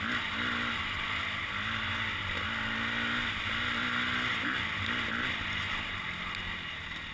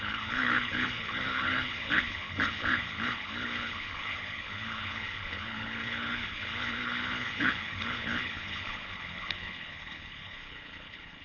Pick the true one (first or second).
first